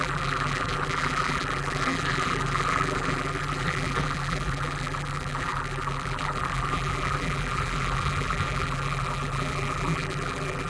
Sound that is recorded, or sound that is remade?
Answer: remade